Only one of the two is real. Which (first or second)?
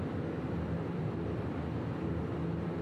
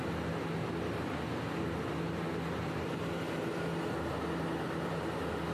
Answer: second